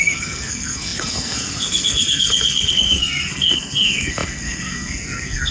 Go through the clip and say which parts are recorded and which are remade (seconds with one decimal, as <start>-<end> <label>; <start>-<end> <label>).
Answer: 0.0-5.5 remade